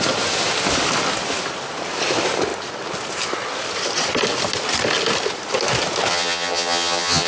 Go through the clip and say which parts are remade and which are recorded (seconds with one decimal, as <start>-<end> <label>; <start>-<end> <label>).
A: 0.0-6.1 recorded; 6.1-7.3 remade